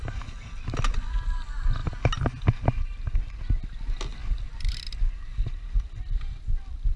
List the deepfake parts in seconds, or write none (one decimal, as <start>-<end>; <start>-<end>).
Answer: none